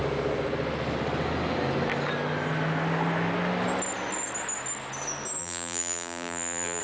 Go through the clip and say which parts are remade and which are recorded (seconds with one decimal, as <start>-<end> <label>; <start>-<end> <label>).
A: 0.0-5.4 recorded; 5.4-6.8 remade